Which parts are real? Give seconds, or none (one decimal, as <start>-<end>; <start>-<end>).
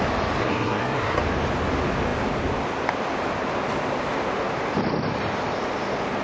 0.0-0.4; 1.2-6.2